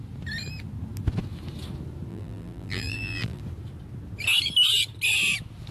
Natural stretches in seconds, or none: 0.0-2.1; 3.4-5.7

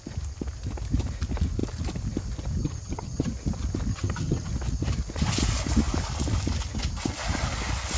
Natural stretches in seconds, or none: 0.0-2.6; 3.3-3.9; 4.5-8.0

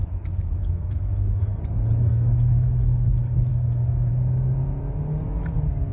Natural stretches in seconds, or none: 0.0-0.6; 1.6-2.0; 3.1-3.5; 4.1-5.9

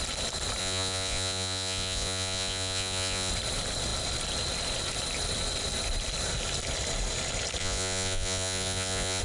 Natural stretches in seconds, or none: 0.0-0.6; 3.3-7.6

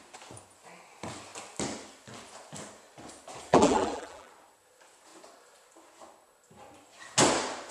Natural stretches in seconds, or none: 0.0-3.5; 4.3-7.7

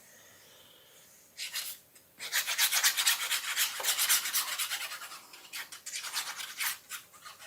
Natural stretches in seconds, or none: 0.0-7.5

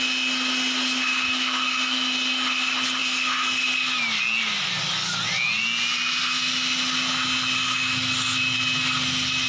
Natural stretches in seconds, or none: 0.0-9.5